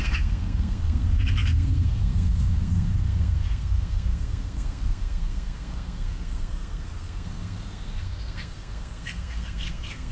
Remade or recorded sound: remade